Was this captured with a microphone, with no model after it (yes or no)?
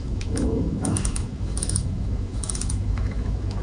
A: no